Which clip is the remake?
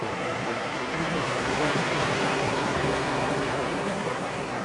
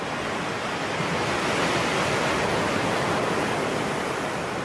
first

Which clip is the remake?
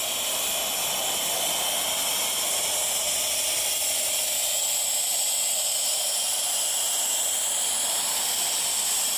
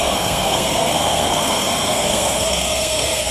second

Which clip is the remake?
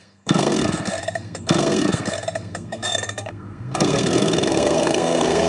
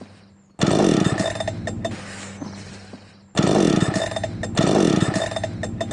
first